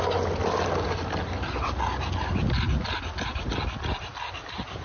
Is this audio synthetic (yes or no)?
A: no